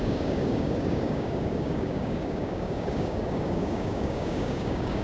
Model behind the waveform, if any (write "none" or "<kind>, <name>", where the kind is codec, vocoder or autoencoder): codec, DAC